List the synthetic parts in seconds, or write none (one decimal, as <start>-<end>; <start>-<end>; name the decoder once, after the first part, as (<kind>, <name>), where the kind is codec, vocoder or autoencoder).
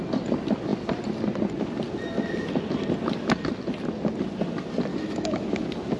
4.9-5.5 (autoencoder, DAC-VAE)